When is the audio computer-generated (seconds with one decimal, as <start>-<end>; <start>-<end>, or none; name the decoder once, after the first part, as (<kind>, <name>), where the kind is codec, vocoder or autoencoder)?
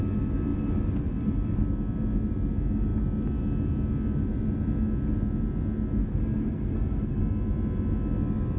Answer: 6.0-7.2 (codec, SNAC)